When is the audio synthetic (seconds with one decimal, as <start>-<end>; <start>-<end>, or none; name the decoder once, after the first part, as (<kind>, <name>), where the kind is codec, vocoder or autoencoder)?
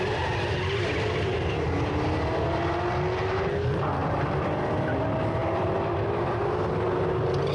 4.0-5.0 (vocoder, BigVGAN v2); 5.4-6.4